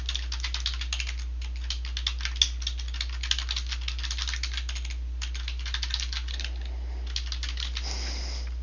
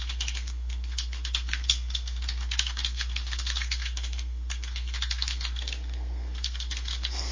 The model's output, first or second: second